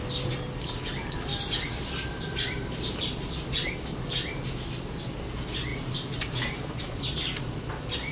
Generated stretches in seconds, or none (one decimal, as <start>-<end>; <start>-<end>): 1.3-3.0; 5.7-7.0